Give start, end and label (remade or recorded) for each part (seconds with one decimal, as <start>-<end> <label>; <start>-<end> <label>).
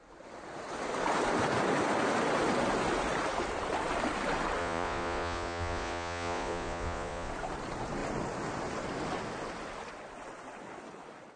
0.0-4.6 recorded; 4.6-7.3 remade; 7.3-11.4 recorded